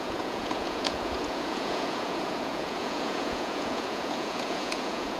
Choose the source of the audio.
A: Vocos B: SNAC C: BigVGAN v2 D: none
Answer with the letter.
A